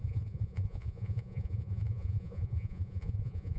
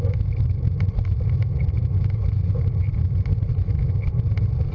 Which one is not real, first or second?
first